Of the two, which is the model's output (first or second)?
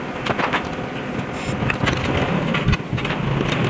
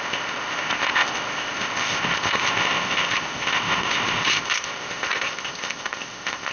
second